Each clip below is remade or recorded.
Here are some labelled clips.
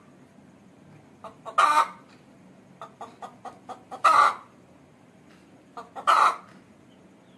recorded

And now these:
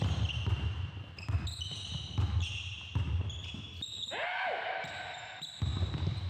recorded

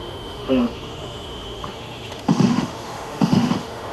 remade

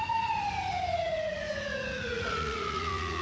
remade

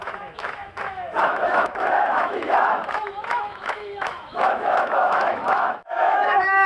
remade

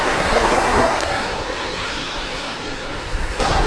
remade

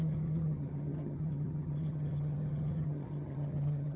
remade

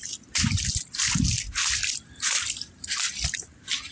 recorded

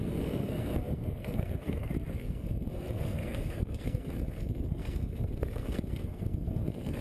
remade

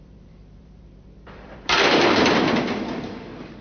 remade